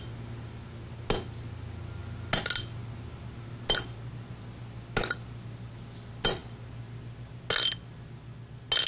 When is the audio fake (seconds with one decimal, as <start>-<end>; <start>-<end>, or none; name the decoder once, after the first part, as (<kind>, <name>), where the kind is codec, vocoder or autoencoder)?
none